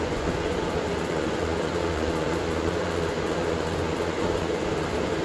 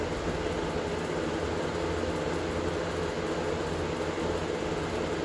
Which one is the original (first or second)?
second